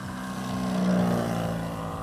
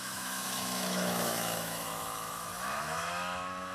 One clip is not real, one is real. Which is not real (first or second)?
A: second